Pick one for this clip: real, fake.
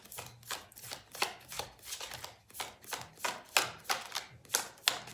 real